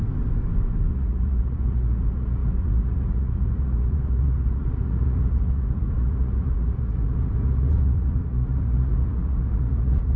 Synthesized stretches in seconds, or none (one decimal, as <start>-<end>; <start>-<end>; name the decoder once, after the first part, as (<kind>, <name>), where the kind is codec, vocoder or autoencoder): 0.9-10.2 (vocoder, Vocos)